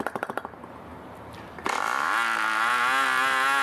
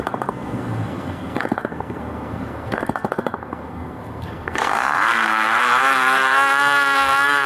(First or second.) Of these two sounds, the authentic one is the first